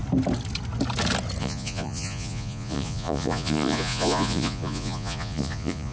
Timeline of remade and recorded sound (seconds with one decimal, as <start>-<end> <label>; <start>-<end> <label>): 0.0-1.4 recorded; 1.4-5.9 remade